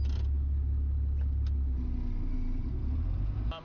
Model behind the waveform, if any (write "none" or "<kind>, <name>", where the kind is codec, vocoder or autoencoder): none